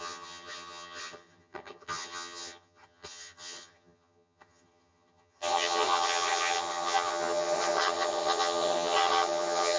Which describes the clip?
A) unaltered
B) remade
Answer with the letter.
B